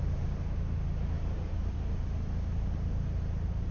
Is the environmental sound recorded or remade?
recorded